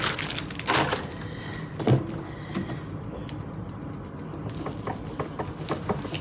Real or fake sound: real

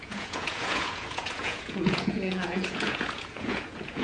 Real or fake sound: fake